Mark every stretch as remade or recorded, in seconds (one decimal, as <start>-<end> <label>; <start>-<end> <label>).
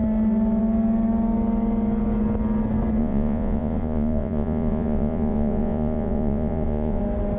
0.0-3.0 recorded; 3.0-7.0 remade; 7.0-7.4 recorded